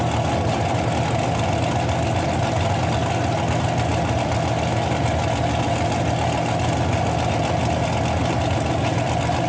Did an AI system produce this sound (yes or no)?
no